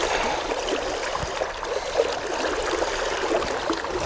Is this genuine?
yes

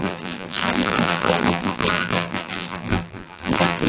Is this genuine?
no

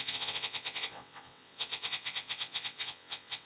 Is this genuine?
no